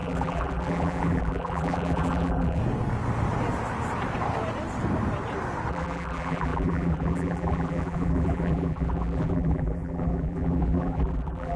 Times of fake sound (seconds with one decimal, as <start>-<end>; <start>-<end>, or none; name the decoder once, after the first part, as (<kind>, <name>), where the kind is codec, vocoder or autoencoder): 0.0-2.6 (vocoder, BigVGAN v2); 5.7-11.6

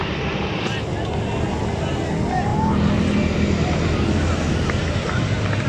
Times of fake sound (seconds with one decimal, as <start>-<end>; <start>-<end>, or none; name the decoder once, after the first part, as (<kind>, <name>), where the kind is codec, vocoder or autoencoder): none

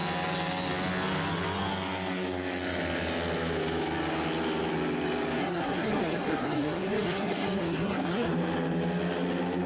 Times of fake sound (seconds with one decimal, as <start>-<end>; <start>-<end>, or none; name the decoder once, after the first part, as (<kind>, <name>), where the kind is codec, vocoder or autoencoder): 5.4-8.3 (codec, SNAC)

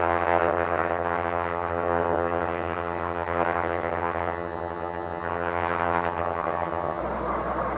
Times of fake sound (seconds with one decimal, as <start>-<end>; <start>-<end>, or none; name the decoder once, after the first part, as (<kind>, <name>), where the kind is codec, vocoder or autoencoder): 0.0-7.0 (vocoder, HiFi-GAN)